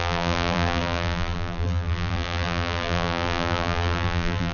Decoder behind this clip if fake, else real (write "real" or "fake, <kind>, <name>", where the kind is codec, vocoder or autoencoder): fake, vocoder, BigVGAN v2